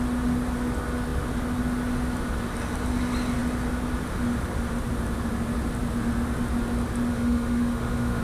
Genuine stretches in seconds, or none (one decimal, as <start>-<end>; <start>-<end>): 0.0-7.1